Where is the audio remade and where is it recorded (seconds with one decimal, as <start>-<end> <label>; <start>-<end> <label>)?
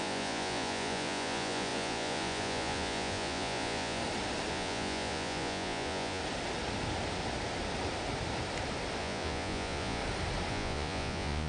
0.0-4.0 remade; 4.0-4.5 recorded; 4.5-6.2 remade; 6.2-9.0 recorded; 9.0-10.0 remade; 10.0-10.5 recorded; 10.5-11.5 remade